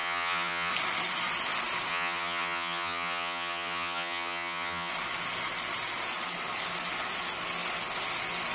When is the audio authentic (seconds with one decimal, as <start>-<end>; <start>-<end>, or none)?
0.7-1.9; 4.9-8.5